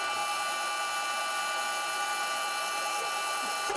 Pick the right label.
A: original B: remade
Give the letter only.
A